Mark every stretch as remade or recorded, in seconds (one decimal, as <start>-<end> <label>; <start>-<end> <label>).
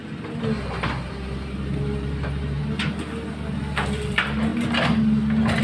0.0-0.9 recorded; 0.9-2.6 remade; 2.6-3.6 recorded; 3.6-4.5 remade; 4.5-5.6 recorded